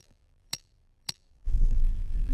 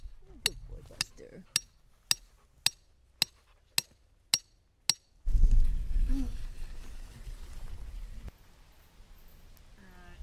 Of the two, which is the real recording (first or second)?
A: second